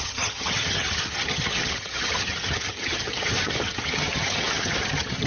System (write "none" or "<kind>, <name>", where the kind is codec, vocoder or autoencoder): vocoder, HiFi-GAN